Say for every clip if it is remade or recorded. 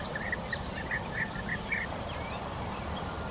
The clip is recorded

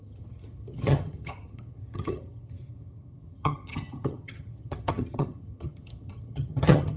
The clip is remade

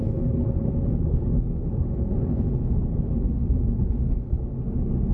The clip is remade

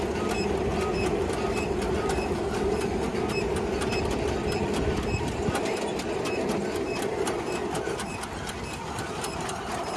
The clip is recorded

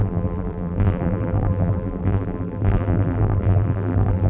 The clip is remade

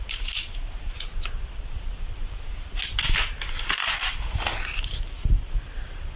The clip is recorded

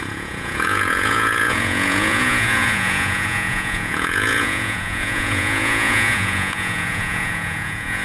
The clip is remade